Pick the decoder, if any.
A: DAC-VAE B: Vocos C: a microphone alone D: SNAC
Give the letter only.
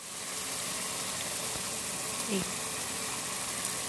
C